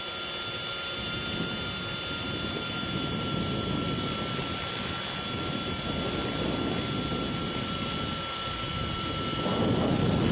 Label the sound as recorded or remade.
recorded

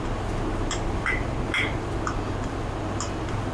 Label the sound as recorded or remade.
recorded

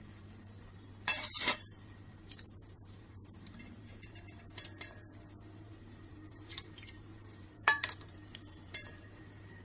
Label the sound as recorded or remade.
remade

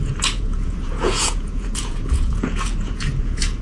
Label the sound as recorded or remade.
remade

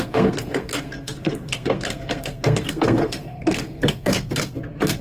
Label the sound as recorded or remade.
remade